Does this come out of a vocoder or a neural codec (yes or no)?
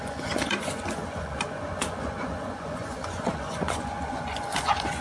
yes